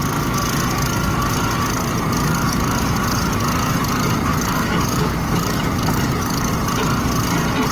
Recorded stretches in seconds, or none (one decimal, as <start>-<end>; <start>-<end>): 0.0-2.2; 2.8-4.3; 6.5-7.7